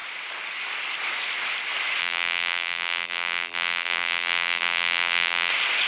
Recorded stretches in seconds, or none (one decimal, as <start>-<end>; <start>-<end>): 0.0-2.0; 5.5-5.9